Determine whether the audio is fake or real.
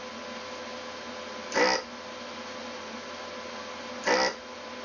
real